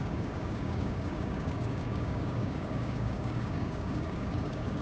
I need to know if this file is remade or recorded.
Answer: remade